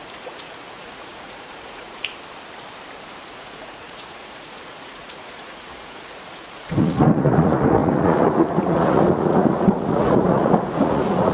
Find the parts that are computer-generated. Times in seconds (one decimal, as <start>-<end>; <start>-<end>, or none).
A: 0.0-2.1; 3.3-11.3